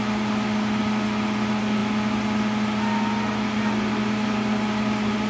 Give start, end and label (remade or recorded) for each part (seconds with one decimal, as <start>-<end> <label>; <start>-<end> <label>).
0.0-5.3 recorded